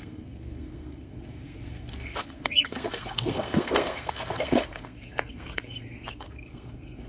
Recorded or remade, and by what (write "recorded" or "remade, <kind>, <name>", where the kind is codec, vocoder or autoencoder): remade, codec, SNAC